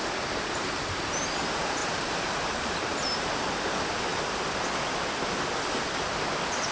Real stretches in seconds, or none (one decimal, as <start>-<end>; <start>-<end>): 0.0-6.7